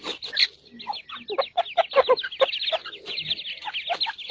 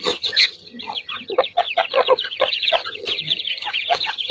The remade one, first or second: second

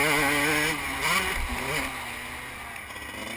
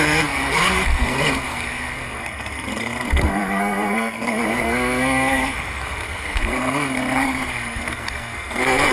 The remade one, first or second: second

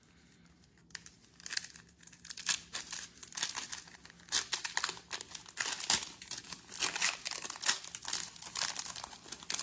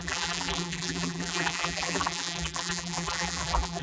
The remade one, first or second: second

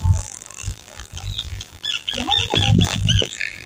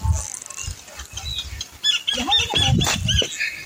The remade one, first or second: first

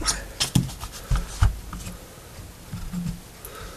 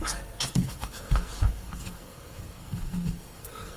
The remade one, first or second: second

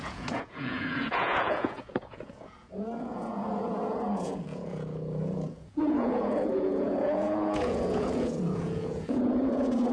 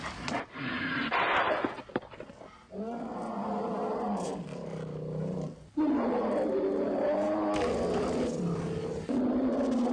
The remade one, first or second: first